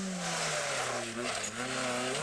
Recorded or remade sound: recorded